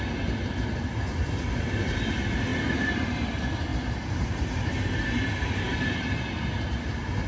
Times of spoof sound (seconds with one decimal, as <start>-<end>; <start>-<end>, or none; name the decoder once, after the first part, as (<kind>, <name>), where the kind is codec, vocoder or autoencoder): 2.5-3.3 (vocoder, BigVGAN v2); 3.7-5.7

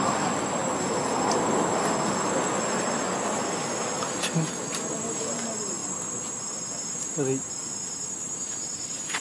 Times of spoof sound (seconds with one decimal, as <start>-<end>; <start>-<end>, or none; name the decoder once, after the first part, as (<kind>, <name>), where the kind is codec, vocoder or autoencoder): none